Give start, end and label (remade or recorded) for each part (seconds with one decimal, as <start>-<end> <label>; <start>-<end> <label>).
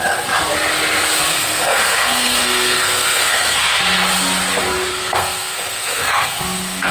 0.0-1.3 recorded; 1.3-3.8 remade; 3.8-4.9 recorded; 4.9-6.9 remade